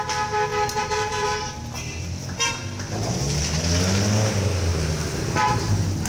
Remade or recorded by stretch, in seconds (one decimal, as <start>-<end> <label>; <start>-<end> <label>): 0.0-0.5 recorded; 0.5-1.5 remade; 1.5-4.7 recorded; 4.7-5.2 remade; 5.2-6.1 recorded